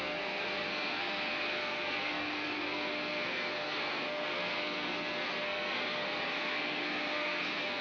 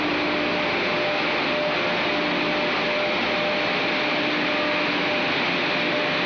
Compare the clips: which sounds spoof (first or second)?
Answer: first